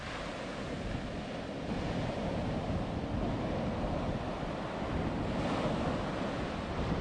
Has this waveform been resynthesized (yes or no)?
no